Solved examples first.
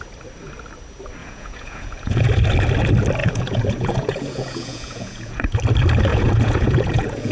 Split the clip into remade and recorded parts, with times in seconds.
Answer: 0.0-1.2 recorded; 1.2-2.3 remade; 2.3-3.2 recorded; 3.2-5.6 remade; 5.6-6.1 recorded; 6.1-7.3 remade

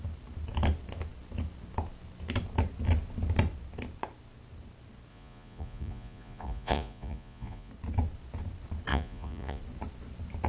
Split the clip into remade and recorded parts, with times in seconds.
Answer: 0.0-5.1 recorded; 5.1-7.7 remade; 7.7-8.9 recorded; 8.9-9.6 remade; 9.6-10.5 recorded

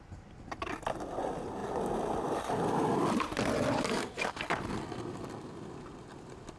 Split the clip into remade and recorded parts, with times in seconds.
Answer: 0.0-6.6 recorded

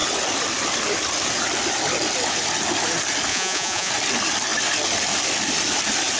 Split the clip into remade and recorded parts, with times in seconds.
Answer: 0.0-3.3 recorded; 3.3-3.9 remade; 3.9-6.2 recorded